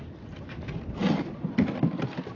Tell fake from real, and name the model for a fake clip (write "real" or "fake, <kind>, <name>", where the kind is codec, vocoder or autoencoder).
real